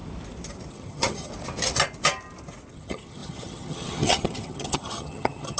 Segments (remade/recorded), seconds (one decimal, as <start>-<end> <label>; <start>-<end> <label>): 0.0-0.7 recorded; 0.7-1.3 remade; 1.3-2.7 recorded; 2.7-5.6 remade